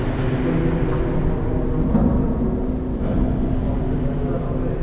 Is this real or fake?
real